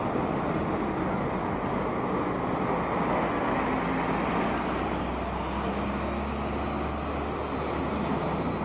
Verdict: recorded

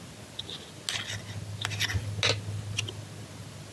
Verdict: recorded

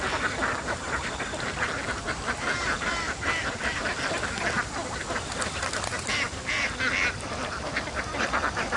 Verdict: recorded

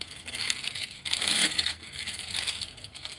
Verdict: remade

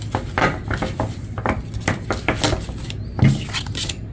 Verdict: recorded